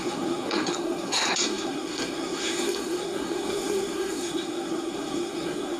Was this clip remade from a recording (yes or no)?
yes